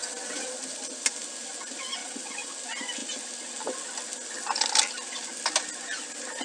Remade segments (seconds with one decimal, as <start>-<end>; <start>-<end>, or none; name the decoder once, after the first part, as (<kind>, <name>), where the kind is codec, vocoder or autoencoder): 0.0-0.5 (vocoder, WaveNeXt); 2.0-2.5